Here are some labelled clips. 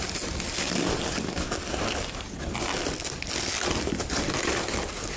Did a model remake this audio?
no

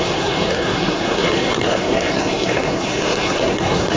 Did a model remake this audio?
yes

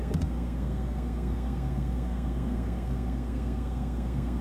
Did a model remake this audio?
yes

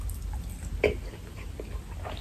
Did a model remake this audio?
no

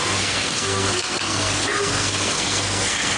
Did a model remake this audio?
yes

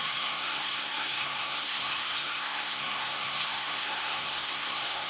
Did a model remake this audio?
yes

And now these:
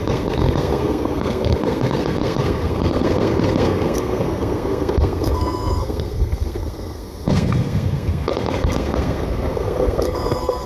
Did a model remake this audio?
yes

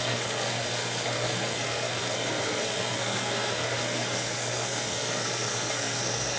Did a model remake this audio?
yes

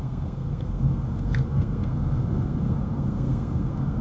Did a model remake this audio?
yes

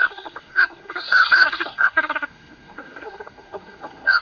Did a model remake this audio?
yes